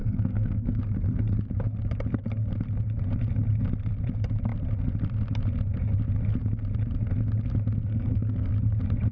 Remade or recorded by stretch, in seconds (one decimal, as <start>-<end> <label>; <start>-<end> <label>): 0.0-0.8 remade; 0.8-7.9 recorded; 7.9-8.5 remade; 8.5-9.1 recorded